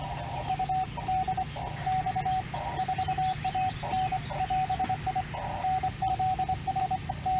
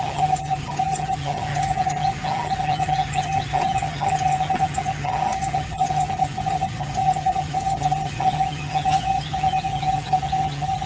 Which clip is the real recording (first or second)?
first